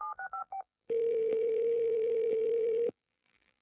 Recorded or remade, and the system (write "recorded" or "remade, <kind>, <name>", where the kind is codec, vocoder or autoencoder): remade, vocoder, BigVGAN v2